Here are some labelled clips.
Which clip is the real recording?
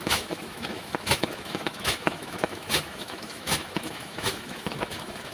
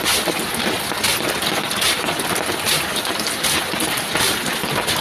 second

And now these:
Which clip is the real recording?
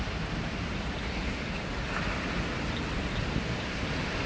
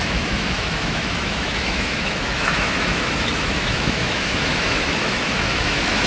first